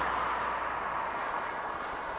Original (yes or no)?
yes